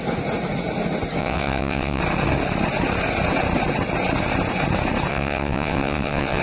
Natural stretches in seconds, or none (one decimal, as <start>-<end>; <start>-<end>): 0.0-1.2; 2.0-5.1